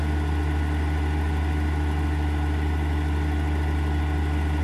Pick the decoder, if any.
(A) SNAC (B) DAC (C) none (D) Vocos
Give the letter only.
C